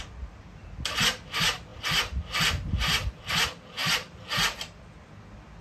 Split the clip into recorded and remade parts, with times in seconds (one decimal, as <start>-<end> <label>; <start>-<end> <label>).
0.0-1.7 recorded; 1.7-3.2 remade; 3.2-3.8 recorded; 3.8-4.8 remade; 4.8-5.6 recorded